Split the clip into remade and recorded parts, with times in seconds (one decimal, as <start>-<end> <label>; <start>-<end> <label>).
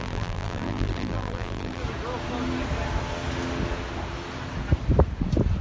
0.0-1.8 remade; 1.8-5.6 recorded